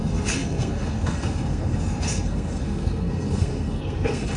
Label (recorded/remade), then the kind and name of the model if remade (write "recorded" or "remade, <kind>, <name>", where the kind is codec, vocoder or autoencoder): remade, codec, SNAC